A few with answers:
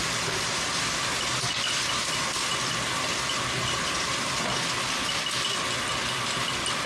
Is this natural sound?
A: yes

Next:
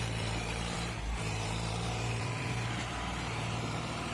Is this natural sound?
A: no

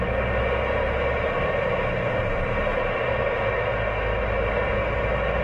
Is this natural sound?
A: yes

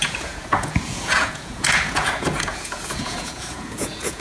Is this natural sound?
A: no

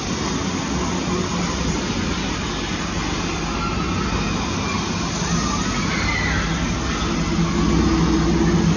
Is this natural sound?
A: yes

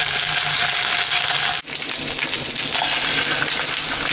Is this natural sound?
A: yes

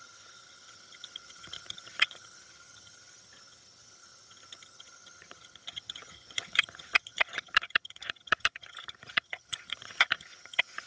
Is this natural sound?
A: no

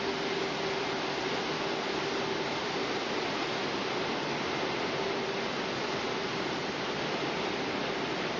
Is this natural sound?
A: yes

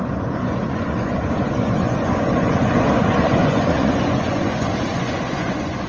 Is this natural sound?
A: no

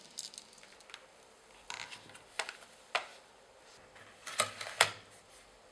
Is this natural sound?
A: yes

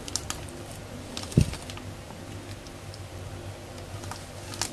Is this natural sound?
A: yes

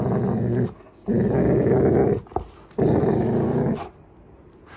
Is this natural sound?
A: yes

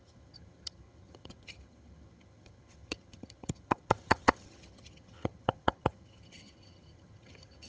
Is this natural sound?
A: no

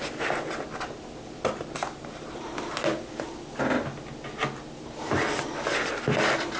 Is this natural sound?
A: yes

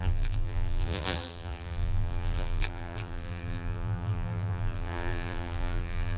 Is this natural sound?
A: no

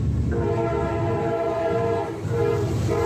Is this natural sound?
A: yes